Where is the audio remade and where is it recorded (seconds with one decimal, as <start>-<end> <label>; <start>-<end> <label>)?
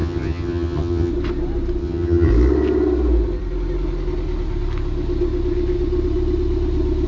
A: 0.0-1.1 remade; 1.1-1.8 recorded; 1.8-2.3 remade; 2.3-7.1 recorded